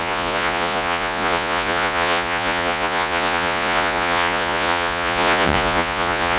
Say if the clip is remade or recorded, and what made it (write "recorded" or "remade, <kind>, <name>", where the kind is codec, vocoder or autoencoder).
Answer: remade, vocoder, Vocos